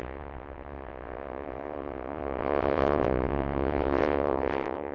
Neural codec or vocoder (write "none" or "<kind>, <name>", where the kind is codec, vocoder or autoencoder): vocoder, WaveNeXt